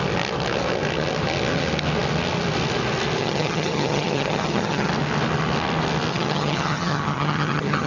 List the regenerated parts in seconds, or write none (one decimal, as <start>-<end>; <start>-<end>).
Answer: 3.2-4.9; 6.1-7.9